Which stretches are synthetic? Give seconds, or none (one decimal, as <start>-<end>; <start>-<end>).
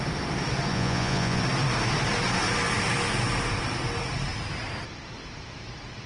0.7-1.4